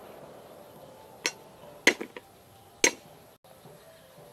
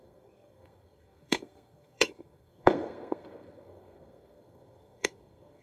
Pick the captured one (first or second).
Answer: first